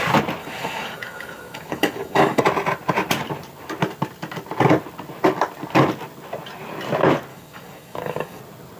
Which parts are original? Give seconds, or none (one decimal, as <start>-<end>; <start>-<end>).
0.0-0.4; 2.4-7.3; 8.4-8.8